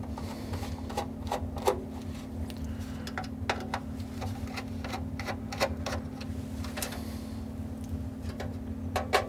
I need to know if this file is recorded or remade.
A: recorded